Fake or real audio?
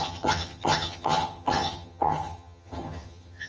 fake